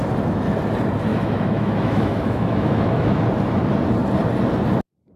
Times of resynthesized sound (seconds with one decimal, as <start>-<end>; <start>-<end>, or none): 1.1-3.2